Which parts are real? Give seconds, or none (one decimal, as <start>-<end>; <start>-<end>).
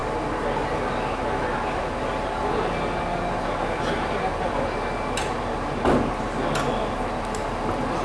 0.0-8.0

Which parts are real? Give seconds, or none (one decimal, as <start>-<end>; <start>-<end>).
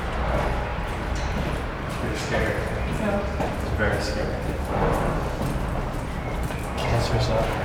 0.0-0.7; 4.8-7.6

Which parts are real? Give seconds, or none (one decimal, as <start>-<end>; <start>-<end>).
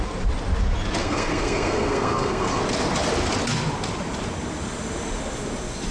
0.0-1.0; 2.6-5.9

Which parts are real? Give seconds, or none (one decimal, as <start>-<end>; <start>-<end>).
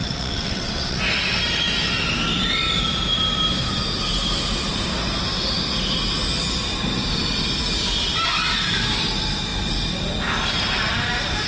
1.0-11.5